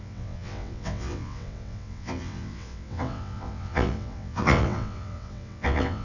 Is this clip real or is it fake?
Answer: fake